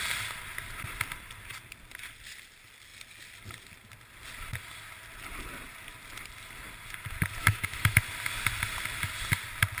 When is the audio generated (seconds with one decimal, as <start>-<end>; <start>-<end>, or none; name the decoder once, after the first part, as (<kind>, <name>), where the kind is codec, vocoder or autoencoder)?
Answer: 7.4-8.0 (autoencoder, DAC-VAE)